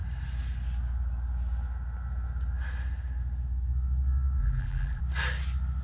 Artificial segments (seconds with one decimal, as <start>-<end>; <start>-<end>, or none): 4.4-5.0